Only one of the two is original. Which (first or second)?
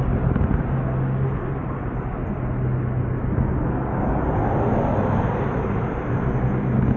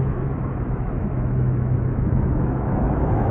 first